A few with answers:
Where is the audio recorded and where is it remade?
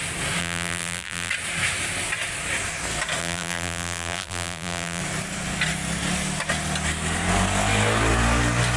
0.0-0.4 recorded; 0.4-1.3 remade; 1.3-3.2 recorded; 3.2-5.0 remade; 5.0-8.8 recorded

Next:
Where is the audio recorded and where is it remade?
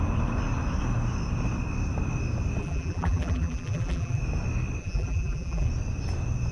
0.0-2.6 recorded; 2.6-4.2 remade; 4.2-4.8 recorded; 4.8-5.7 remade; 5.7-6.5 recorded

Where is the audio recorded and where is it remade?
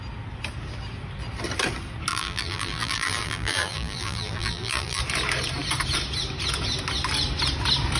0.0-2.1 recorded; 2.1-5.0 remade; 5.0-8.0 recorded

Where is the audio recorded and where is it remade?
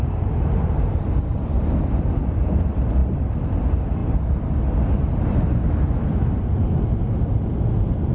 0.0-8.1 recorded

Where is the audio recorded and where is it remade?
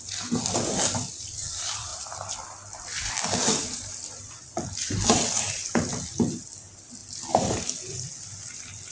0.0-8.9 remade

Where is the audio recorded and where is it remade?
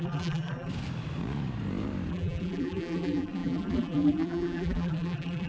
0.0-0.7 remade; 0.7-2.1 recorded; 2.1-5.5 remade